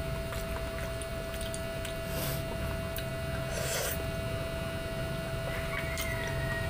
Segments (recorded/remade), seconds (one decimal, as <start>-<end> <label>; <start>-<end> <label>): 0.0-6.7 recorded